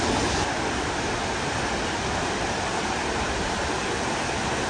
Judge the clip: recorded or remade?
recorded